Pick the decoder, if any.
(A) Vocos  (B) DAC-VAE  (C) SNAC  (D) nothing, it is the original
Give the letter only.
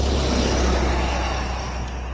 D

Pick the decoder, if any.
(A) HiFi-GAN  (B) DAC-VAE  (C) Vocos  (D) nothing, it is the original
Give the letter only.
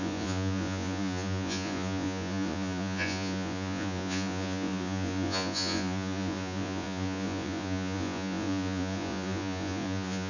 C